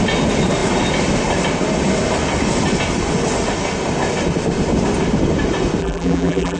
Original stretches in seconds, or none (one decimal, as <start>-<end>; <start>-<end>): 0.0-5.8